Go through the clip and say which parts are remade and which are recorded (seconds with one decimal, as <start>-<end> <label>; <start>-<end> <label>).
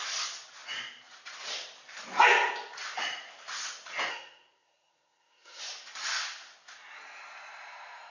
0.0-4.1 recorded; 4.1-5.6 remade; 5.6-8.1 recorded